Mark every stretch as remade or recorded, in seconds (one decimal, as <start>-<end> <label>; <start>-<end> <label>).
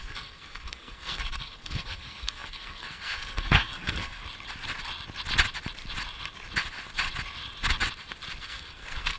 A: 0.0-4.2 remade; 4.2-8.4 recorded; 8.4-9.2 remade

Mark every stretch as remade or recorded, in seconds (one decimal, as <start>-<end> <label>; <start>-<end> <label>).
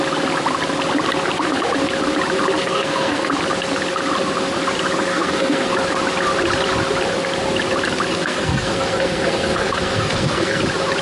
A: 0.0-2.6 recorded; 2.6-3.3 remade; 3.3-5.1 recorded; 5.1-5.7 remade; 5.7-8.1 recorded; 8.1-10.6 remade; 10.6-11.0 recorded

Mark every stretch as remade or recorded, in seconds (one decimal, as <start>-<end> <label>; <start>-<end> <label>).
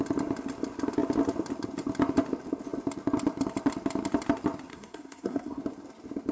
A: 0.0-4.7 recorded; 4.7-5.6 remade; 5.6-6.3 recorded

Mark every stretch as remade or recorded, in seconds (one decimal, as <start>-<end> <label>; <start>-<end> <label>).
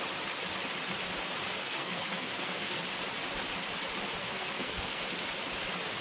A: 0.0-1.6 recorded; 1.6-2.8 remade; 2.8-4.2 recorded; 4.2-5.0 remade; 5.0-6.0 recorded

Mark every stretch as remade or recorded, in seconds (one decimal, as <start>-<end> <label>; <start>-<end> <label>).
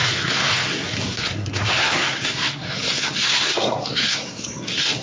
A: 0.0-5.0 remade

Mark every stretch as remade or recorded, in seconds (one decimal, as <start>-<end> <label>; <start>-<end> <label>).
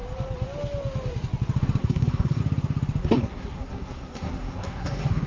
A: 0.0-1.8 recorded; 1.8-2.4 remade; 2.4-3.0 recorded; 3.0-5.3 remade